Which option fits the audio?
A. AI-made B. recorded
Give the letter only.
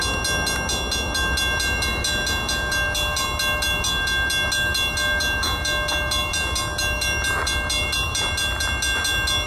B